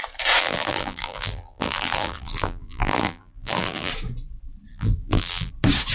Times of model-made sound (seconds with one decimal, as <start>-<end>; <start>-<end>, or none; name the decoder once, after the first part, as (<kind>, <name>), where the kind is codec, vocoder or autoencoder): 0.4-3.9 (vocoder, BigVGAN v2); 4.7-5.5